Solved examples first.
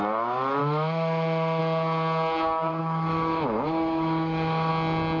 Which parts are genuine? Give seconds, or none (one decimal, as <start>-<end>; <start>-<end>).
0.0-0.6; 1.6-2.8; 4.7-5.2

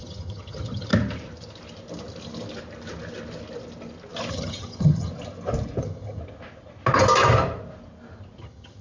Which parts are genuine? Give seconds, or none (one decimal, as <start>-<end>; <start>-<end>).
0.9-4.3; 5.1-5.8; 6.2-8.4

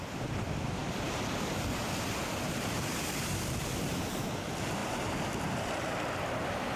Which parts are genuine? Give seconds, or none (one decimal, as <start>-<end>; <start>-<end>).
4.8-6.8